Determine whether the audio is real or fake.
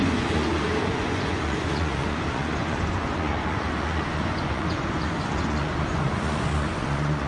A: fake